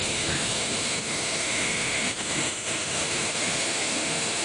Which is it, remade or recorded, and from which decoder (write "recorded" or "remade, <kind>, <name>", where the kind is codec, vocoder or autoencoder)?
remade, autoencoder, DAC-VAE